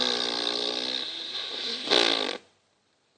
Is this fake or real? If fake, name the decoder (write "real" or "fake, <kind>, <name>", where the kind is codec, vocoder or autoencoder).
real